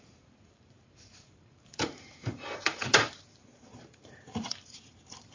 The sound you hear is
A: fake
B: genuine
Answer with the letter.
A